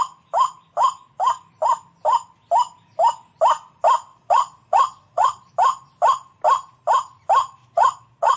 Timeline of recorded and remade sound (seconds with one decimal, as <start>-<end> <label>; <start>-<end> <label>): 0.0-4.1 recorded; 4.1-5.5 remade; 5.5-7.6 recorded; 7.6-8.4 remade